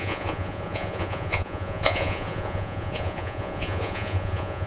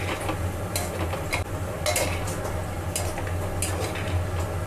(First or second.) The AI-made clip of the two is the first